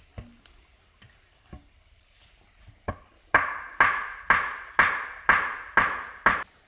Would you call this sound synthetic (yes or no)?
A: no